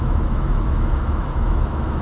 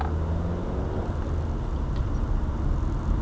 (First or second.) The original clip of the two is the second